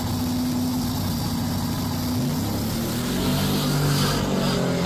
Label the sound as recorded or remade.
recorded